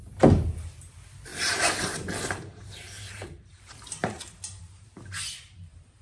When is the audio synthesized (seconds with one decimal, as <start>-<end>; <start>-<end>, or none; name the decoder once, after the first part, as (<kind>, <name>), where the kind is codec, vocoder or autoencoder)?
1.3-4.9 (vocoder, BigVGAN v2)